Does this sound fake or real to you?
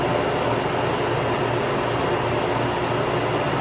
real